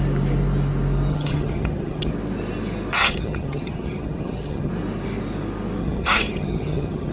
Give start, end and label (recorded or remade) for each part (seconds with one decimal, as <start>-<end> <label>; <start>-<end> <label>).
0.0-1.1 recorded; 1.1-2.1 remade; 2.1-3.0 recorded; 3.0-4.7 remade; 4.7-5.8 recorded; 5.8-7.1 remade